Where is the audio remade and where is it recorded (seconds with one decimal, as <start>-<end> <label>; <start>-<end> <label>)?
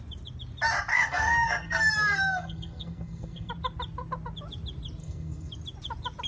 0.0-0.9 recorded; 0.9-3.5 remade; 3.5-5.0 recorded; 5.0-5.5 remade; 5.5-6.3 recorded